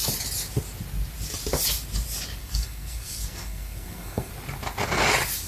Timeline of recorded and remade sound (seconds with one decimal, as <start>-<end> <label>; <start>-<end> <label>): 0.0-2.4 recorded; 2.4-4.3 remade; 4.3-5.5 recorded

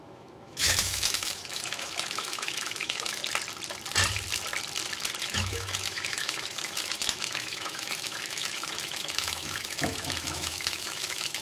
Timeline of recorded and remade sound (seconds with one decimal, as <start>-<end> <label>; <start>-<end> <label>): 0.0-3.2 remade; 3.2-5.2 recorded; 5.2-11.4 remade

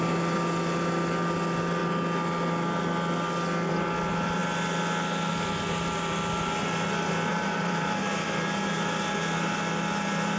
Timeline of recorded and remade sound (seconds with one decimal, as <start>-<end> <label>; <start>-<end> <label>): 0.0-7.3 recorded; 7.3-8.0 remade; 8.0-10.4 recorded